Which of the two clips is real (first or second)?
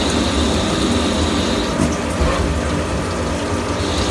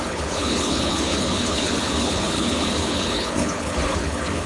first